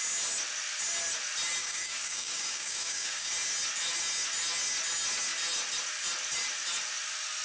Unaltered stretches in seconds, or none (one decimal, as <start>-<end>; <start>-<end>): 0.0-1.6; 3.3-7.4